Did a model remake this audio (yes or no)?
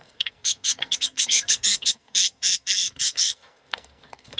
yes